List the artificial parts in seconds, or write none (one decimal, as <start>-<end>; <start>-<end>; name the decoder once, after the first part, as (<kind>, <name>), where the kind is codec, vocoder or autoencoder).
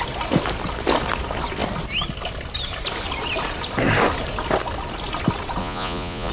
5.6-6.3 (vocoder, Vocos)